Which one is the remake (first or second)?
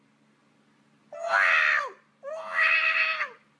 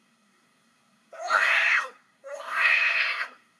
second